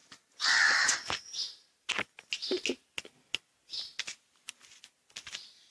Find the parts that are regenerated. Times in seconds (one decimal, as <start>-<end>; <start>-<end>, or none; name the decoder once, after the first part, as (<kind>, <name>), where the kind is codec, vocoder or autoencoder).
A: none